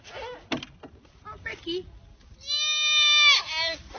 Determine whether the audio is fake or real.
real